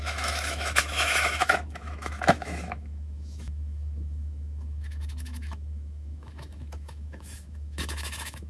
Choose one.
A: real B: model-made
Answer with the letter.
B